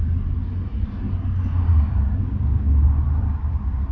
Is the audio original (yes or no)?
yes